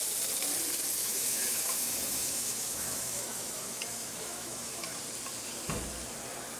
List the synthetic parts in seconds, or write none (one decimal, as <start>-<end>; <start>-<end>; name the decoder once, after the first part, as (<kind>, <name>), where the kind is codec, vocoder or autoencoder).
1.0-5.0 (autoencoder, DAC-VAE)